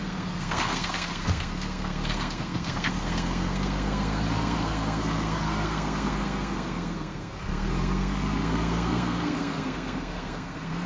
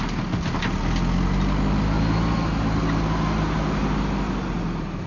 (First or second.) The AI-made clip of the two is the first